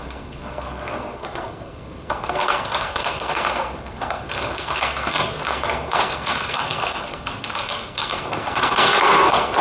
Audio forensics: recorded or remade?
remade